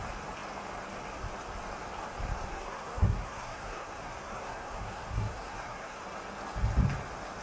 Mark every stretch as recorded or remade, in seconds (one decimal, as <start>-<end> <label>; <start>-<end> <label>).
0.0-2.5 recorded; 2.5-6.0 remade; 6.0-7.4 recorded